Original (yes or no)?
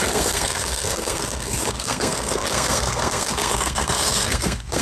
no